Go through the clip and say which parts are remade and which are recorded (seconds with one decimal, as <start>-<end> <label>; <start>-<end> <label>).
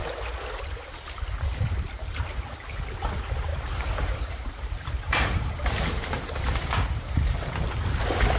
0.0-3.5 recorded; 3.5-8.0 remade; 8.0-8.4 recorded